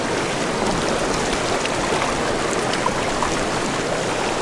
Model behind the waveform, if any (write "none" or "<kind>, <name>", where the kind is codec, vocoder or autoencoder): none